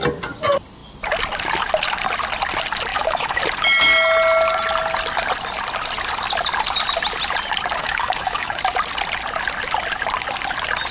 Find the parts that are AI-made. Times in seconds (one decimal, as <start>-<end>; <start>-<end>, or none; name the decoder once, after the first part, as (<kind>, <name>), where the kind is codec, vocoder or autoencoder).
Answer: 2.9-3.4 (autoencoder, DAC-VAE); 7.8-8.6